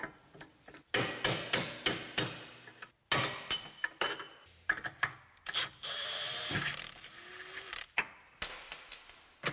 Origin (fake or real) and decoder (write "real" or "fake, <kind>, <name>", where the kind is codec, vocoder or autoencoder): real